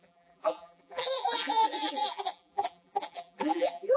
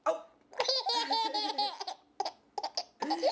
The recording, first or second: second